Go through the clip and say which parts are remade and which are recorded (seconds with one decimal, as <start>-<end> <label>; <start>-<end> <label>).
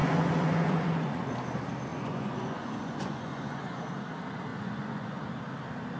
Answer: 0.0-1.3 remade; 1.3-1.9 recorded; 1.9-3.8 remade; 3.8-4.5 recorded; 4.5-5.2 remade; 5.2-6.0 recorded